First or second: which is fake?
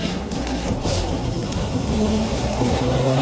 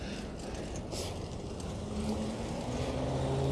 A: first